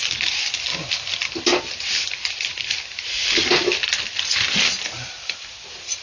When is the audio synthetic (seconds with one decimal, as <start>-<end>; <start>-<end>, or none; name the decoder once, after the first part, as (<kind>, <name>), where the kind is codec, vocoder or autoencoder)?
none